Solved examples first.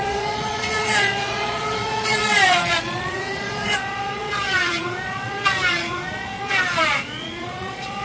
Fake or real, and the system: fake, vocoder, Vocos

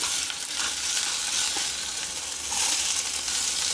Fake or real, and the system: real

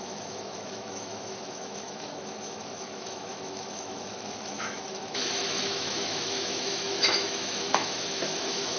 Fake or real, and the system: fake, autoencoder, DAC-VAE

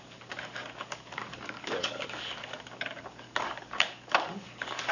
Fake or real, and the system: fake, codec, DAC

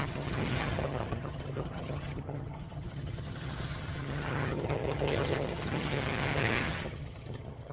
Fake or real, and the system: fake, vocoder, HiFi-GAN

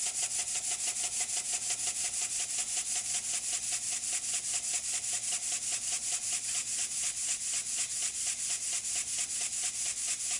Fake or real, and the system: real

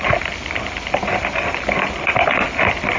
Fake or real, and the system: real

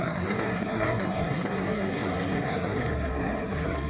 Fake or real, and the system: fake, codec, SNAC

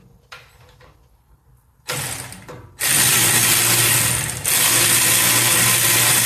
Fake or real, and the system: real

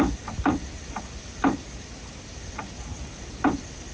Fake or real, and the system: fake, vocoder, BigVGAN v2